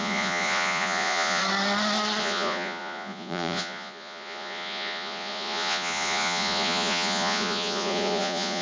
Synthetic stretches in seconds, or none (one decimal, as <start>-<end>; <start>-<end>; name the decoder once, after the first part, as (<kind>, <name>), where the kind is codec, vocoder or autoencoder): 0.0-1.4 (vocoder, Vocos); 2.2-8.6